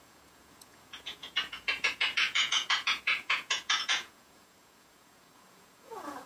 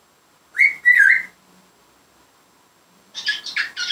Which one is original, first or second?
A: second